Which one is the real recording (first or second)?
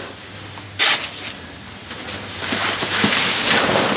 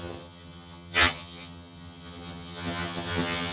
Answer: first